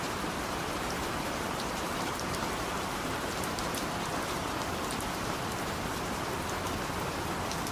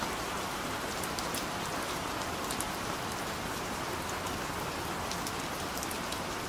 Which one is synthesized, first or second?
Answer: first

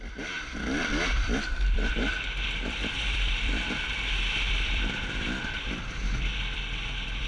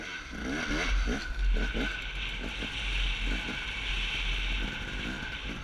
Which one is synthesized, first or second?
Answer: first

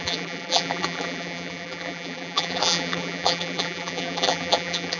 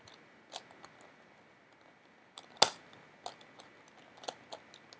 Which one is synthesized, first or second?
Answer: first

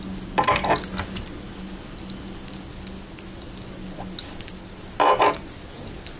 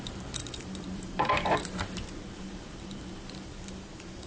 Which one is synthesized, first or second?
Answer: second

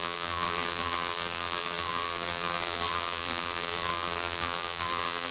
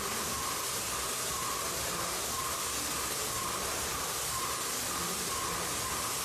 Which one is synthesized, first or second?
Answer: first